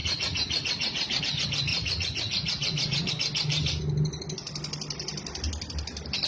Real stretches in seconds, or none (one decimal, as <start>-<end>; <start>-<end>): 1.2-1.7; 3.1-6.3